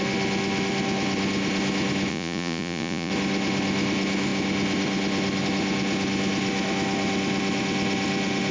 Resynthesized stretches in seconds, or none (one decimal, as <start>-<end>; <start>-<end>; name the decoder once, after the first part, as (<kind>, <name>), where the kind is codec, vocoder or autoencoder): 2.1-3.1 (vocoder, Vocos)